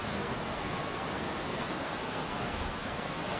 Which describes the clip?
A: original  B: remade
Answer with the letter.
B